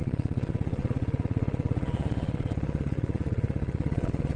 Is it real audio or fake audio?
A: fake